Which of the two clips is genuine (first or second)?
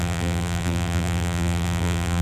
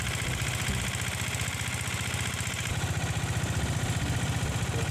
second